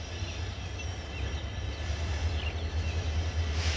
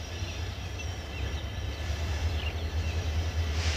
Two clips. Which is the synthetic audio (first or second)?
second